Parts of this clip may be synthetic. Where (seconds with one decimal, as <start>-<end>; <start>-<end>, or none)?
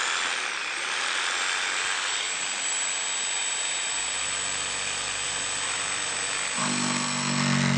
0.6-2.4; 3.4-6.6